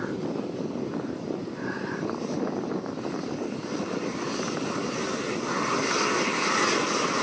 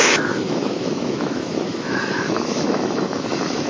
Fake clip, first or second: second